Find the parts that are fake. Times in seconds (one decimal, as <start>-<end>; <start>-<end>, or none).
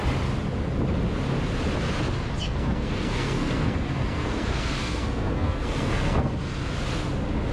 2.4-6.7